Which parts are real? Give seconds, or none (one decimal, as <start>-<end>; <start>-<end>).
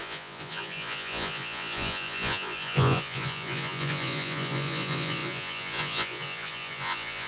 none